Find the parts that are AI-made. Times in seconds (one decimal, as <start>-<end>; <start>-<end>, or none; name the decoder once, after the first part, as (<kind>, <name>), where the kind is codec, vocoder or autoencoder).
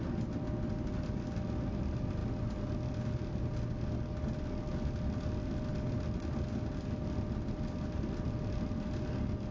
none